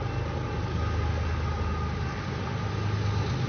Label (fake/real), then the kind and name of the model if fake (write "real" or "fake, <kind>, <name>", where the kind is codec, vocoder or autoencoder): real